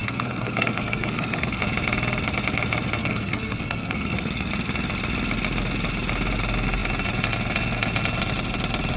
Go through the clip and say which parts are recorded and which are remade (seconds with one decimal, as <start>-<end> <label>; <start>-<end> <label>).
0.0-1.6 remade; 1.6-3.0 recorded; 3.0-4.5 remade; 4.5-9.0 recorded